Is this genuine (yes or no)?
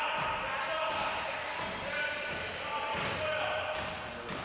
yes